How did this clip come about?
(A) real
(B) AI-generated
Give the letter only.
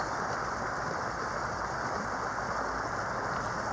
A